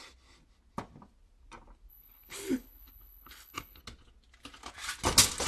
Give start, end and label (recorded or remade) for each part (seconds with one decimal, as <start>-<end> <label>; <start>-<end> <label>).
0.0-1.9 recorded; 1.9-3.8 remade; 3.8-5.5 recorded